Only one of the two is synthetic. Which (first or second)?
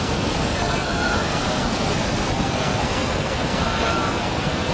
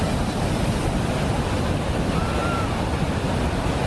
first